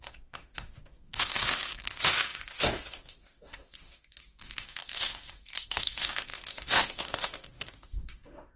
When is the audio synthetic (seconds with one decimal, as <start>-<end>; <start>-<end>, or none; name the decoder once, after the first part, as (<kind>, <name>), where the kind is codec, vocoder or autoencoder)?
0.0-8.6 (autoencoder, DAC-VAE)